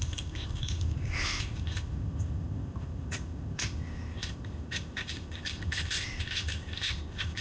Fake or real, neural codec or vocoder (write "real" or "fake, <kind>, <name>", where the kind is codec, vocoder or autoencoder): fake, codec, ZipCodec